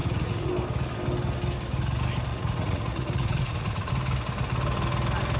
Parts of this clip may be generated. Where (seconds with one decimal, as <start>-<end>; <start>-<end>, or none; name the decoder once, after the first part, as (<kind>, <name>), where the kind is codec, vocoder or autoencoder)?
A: 0.0-0.5 (vocoder, Vocos); 2.3-3.9